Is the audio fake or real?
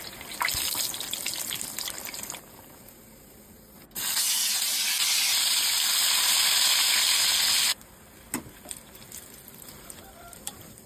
real